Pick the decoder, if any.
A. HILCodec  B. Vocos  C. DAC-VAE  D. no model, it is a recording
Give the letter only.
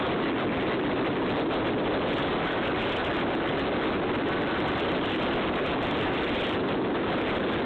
D